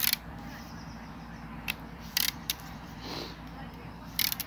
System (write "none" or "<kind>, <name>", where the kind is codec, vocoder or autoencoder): vocoder, BigVGAN v2